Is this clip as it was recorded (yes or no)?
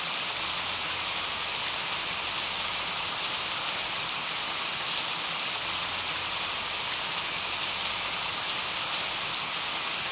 yes